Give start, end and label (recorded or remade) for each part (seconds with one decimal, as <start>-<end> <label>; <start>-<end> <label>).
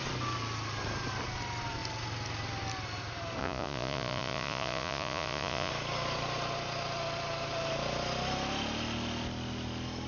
0.0-3.4 recorded; 3.4-5.7 remade; 5.7-10.1 recorded